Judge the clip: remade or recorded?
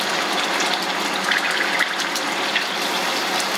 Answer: recorded